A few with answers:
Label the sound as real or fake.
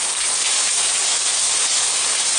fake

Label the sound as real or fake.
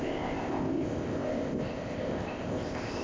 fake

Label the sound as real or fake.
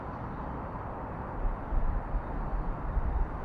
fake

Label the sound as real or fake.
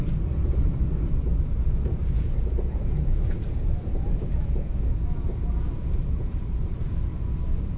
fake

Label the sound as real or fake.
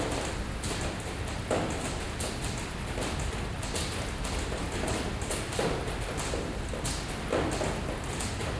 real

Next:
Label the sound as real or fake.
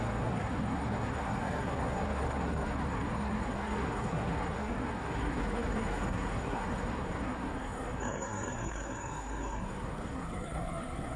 fake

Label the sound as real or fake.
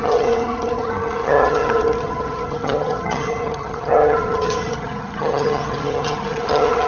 fake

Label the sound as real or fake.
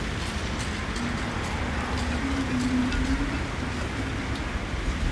real